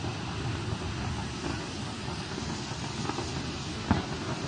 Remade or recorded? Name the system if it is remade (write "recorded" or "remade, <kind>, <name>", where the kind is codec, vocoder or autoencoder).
recorded